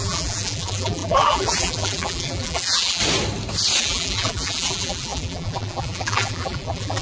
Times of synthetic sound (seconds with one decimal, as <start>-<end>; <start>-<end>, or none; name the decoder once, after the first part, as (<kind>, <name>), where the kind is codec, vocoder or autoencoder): 0.0-3.0 (vocoder, BigVGAN v2); 3.8-7.0

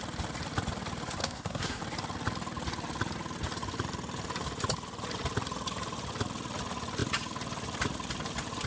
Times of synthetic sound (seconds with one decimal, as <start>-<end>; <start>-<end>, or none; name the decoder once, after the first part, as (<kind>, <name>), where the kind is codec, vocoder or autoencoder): 1.2-1.8 (codec, SNAC)